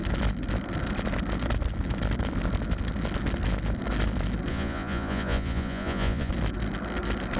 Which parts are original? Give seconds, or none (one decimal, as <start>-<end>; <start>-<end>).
0.0-4.5; 6.3-7.4